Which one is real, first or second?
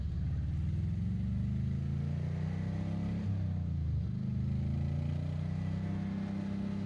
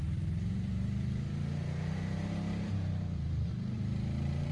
first